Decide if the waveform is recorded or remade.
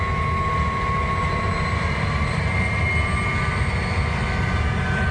recorded